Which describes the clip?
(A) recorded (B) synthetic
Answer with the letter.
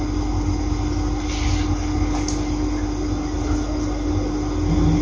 A